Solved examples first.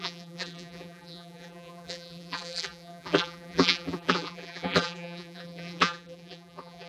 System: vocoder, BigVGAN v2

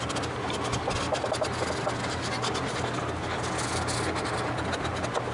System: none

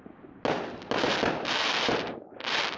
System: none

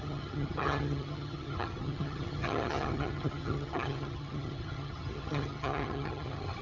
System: vocoder, HiFi-GAN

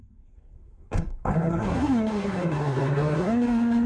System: codec, SNAC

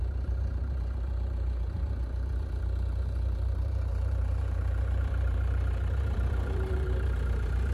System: vocoder, BigVGAN v2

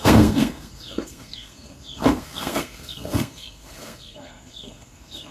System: codec, SNAC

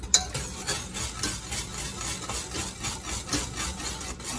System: none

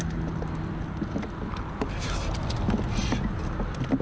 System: none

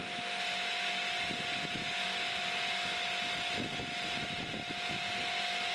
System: none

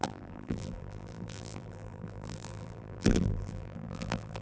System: vocoder, BigVGAN v2